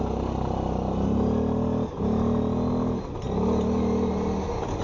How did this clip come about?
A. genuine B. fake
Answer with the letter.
A